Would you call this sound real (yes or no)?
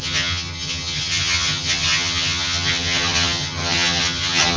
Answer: no